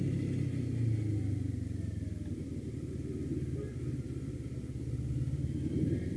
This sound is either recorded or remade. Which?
recorded